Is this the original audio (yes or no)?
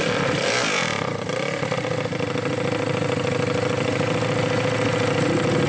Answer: yes